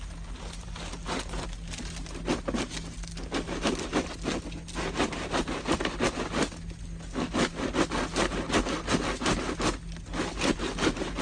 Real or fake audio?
real